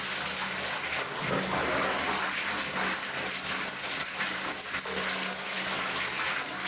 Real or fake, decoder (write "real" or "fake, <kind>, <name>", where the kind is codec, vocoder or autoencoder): real